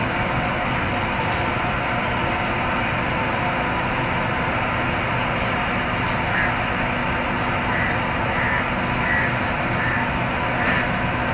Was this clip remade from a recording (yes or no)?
no